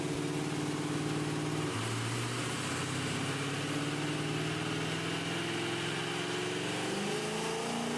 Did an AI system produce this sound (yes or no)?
no